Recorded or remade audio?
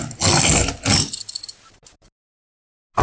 recorded